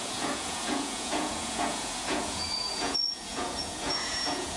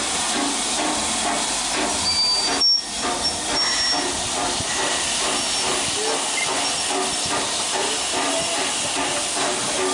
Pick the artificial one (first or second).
first